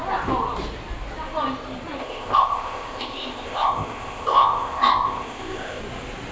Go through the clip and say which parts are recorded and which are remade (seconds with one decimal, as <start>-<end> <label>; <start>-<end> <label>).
0.0-2.0 recorded; 2.0-5.8 remade; 5.8-6.3 recorded